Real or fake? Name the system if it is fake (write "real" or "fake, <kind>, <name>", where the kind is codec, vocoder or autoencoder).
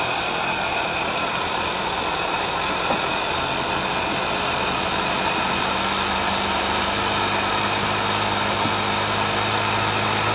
real